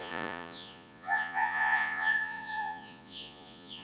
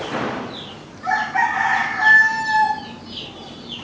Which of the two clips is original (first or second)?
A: second